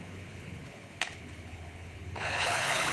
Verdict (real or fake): fake